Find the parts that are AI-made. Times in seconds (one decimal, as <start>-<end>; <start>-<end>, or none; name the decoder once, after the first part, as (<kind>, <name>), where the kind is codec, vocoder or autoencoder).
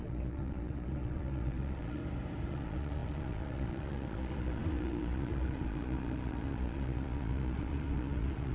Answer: 0.0-2.0 (vocoder, Vocos); 2.5-8.5